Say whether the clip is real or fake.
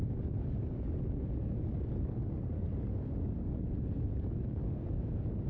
fake